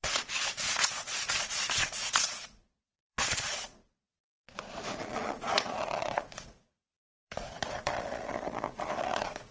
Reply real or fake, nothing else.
fake